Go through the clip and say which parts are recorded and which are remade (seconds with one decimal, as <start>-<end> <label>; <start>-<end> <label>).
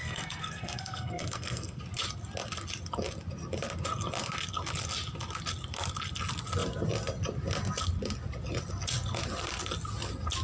0.0-1.8 remade; 1.8-10.4 recorded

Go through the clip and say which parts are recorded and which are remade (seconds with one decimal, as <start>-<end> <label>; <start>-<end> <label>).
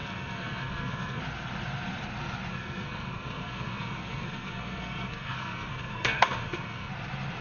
0.0-1.2 remade; 1.2-2.5 recorded; 2.5-6.9 remade; 6.9-7.4 recorded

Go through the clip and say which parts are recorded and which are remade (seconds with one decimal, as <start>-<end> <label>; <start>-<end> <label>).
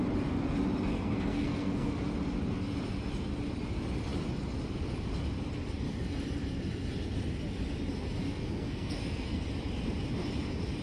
0.0-0.9 recorded; 0.9-1.9 remade; 1.9-8.2 recorded; 8.2-9.4 remade; 9.4-10.8 recorded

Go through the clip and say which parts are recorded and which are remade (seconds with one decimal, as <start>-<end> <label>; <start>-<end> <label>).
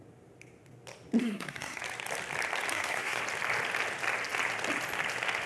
0.0-1.2 recorded; 1.2-1.8 remade; 1.8-2.7 recorded; 2.7-3.2 remade; 3.2-5.5 recorded